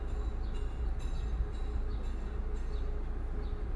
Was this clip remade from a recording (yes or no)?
no